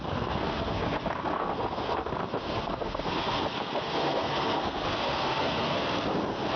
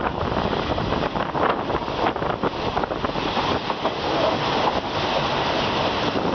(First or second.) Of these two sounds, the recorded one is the second